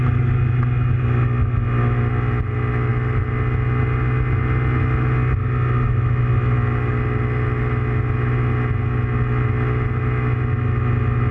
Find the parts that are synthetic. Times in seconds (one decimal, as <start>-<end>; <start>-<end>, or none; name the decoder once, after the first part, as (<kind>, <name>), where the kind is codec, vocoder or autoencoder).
none